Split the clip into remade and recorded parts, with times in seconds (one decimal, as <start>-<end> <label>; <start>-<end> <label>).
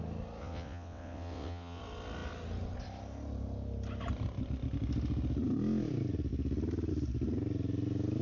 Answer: 0.0-0.4 recorded; 0.4-1.8 remade; 1.8-8.2 recorded